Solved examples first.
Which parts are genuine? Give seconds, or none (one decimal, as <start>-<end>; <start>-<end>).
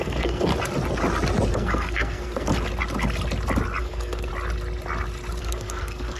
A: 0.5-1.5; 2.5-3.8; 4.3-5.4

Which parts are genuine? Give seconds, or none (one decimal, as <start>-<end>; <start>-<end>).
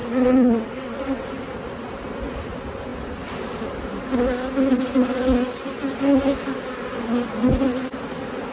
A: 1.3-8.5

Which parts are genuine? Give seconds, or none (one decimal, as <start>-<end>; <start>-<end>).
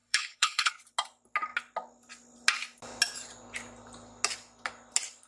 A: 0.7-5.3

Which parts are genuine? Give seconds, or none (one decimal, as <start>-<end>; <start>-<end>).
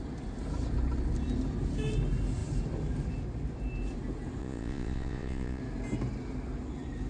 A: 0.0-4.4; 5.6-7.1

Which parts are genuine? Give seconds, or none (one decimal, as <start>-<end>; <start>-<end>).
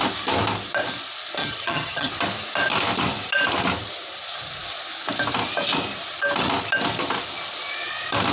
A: 0.0-1.4; 2.1-8.3